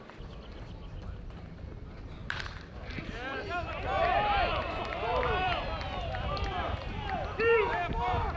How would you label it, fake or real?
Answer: fake